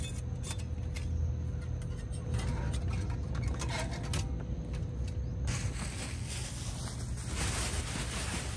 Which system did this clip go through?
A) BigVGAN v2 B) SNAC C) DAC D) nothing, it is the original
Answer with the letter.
D